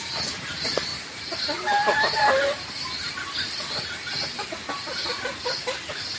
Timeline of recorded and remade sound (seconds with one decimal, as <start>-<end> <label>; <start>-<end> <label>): 0.0-0.9 recorded; 0.9-3.6 remade; 3.6-6.2 recorded

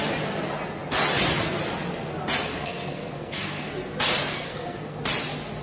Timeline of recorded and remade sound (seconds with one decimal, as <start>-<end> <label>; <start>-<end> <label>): 0.0-2.5 recorded; 2.5-3.7 remade; 3.7-4.3 recorded; 4.3-5.0 remade; 5.0-5.6 recorded